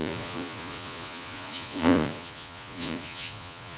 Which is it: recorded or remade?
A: remade